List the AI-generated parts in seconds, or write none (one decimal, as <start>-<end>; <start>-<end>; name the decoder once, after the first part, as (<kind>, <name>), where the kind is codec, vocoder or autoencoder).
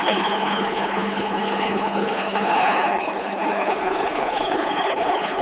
0.0-5.4 (codec, HILCodec)